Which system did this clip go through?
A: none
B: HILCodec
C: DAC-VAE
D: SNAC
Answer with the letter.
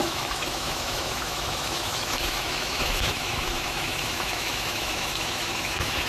C